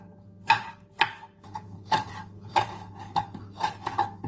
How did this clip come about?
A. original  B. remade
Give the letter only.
B